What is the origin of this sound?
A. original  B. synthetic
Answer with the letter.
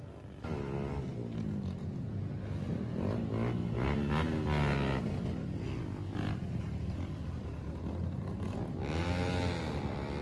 A